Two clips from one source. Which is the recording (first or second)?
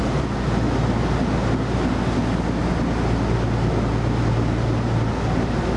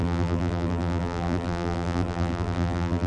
first